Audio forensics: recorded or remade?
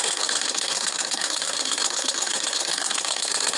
remade